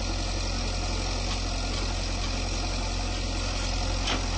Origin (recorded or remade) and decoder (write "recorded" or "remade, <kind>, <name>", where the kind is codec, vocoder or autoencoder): recorded